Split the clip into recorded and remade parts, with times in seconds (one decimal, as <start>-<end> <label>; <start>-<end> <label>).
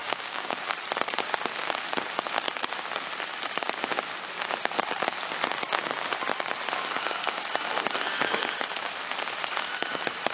0.0-0.6 remade; 0.6-10.3 recorded